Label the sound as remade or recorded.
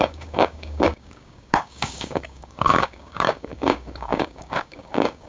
remade